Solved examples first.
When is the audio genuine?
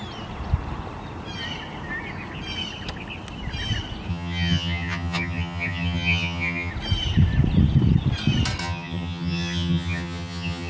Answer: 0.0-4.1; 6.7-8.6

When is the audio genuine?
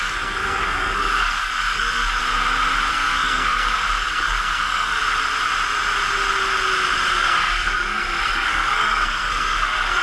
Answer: 2.2-2.9; 5.0-7.1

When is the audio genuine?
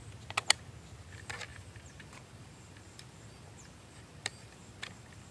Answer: 0.0-1.1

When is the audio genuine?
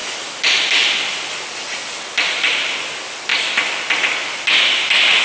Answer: 0.0-5.2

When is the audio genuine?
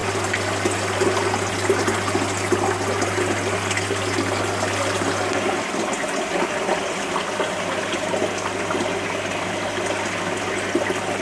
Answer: 0.0-11.2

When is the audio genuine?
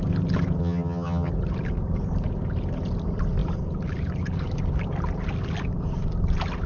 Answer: 0.0-0.6; 1.3-6.7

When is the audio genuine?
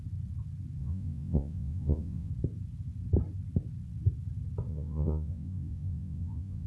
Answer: 0.0-0.8; 2.3-4.7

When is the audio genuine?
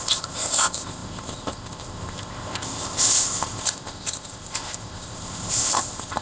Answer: none